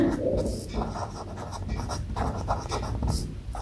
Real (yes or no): yes